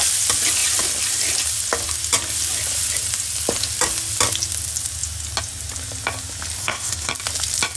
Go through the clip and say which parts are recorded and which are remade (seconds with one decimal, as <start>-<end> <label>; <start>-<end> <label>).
0.0-6.6 recorded; 6.6-7.1 remade; 7.1-7.8 recorded